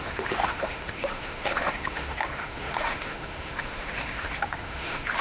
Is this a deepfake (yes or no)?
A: yes